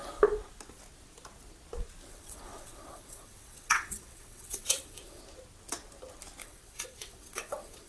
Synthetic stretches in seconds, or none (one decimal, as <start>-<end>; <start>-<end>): 2.1-5.2; 6.4-7.9